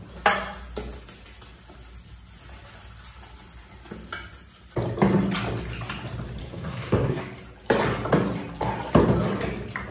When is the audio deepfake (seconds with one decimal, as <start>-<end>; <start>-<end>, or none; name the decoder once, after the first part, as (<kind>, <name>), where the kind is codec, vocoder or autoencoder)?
6.4-7.2 (codec, SNAC)

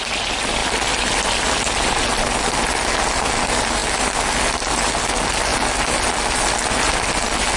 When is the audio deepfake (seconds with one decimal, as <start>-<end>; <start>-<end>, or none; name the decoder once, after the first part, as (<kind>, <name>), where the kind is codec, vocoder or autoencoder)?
none